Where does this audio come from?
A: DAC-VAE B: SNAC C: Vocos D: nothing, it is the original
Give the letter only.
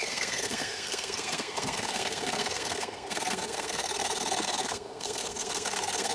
B